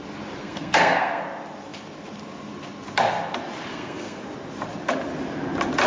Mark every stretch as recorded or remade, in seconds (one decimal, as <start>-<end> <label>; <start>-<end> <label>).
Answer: 0.0-0.4 recorded; 0.4-1.2 remade; 1.2-3.7 recorded; 3.7-4.2 remade; 4.2-5.9 recorded